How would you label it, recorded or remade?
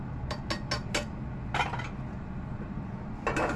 recorded